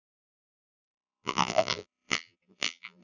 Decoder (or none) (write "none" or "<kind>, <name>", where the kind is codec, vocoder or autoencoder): vocoder, BigVGAN v2